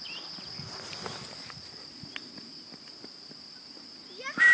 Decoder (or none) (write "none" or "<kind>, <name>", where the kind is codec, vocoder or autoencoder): none